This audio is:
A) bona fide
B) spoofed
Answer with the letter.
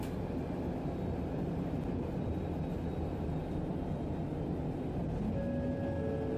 A